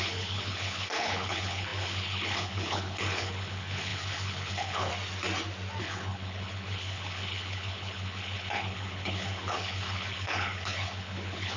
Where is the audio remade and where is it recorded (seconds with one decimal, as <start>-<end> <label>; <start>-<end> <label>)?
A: 0.0-4.9 remade; 4.9-5.8 recorded; 5.8-11.6 remade